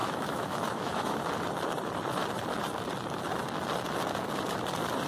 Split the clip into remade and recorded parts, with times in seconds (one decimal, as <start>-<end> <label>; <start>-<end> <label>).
0.0-1.2 remade; 1.2-5.1 recorded